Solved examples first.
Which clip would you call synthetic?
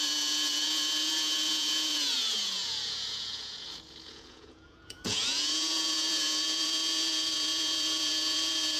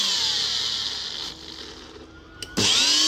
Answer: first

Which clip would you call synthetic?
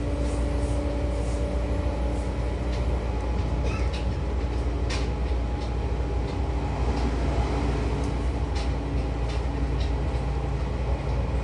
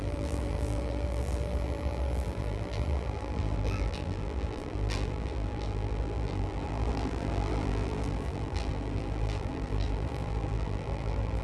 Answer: second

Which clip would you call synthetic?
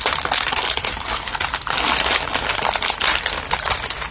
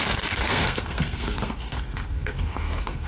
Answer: second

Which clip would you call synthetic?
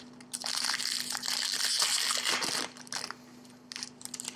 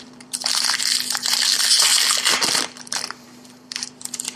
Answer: second